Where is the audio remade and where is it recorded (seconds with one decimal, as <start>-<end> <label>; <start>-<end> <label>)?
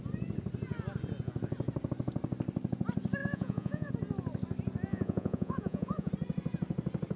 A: 0.0-3.2 recorded; 3.2-3.9 remade; 3.9-4.9 recorded; 4.9-6.1 remade; 6.1-7.2 recorded